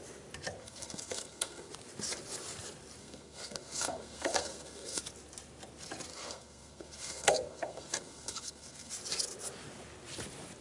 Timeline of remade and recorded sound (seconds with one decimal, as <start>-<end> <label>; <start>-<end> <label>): 0.0-0.6 recorded; 0.6-1.7 remade; 1.7-3.0 recorded; 3.0-5.0 remade; 5.0-6.1 recorded; 6.1-8.9 remade; 8.9-10.6 recorded